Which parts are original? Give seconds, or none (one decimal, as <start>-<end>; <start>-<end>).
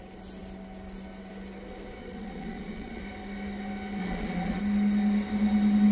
0.0-2.0; 3.0-4.0; 4.6-5.9